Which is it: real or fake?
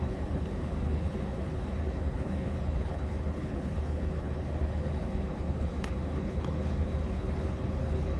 fake